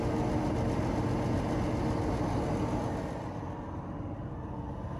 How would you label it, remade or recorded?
recorded